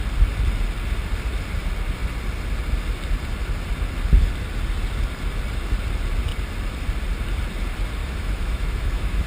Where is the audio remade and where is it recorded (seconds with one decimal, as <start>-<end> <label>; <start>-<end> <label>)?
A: 0.0-8.0 recorded; 8.0-9.3 remade